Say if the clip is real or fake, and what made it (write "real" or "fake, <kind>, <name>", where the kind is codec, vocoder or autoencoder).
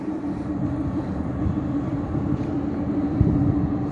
fake, vocoder, BigVGAN v2